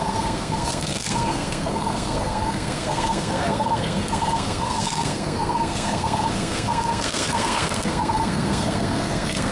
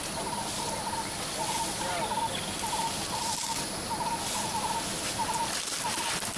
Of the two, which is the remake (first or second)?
first